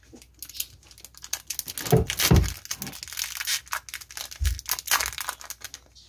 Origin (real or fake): real